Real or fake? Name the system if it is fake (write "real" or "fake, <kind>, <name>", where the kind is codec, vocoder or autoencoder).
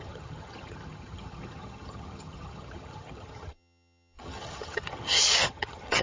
fake, vocoder, HiFi-GAN